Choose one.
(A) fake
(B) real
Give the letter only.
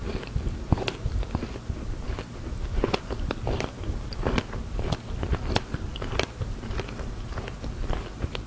B